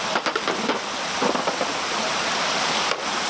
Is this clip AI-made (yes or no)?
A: no